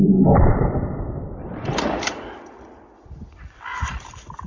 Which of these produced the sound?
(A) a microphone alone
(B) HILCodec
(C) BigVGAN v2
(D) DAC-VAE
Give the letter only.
C